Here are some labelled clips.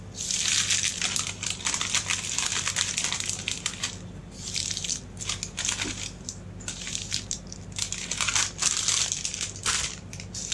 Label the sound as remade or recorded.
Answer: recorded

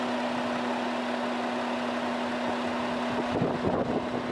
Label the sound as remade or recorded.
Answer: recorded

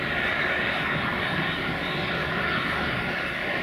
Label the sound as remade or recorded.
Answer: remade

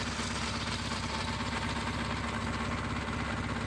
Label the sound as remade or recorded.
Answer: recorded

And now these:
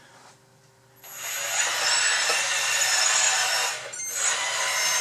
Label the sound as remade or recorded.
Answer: recorded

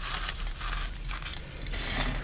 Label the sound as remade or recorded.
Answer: recorded